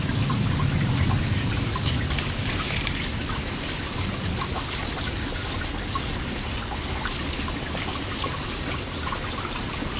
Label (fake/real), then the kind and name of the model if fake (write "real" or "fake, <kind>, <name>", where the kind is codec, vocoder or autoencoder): real